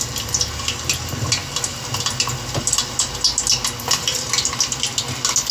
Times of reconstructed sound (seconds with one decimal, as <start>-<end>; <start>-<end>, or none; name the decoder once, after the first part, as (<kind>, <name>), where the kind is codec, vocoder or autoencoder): none